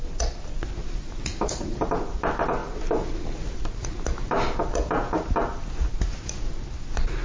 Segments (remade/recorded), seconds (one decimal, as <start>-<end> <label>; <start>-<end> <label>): 0.0-0.8 recorded; 0.8-2.2 remade; 2.2-7.2 recorded